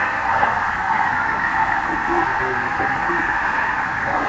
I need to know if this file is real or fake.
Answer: fake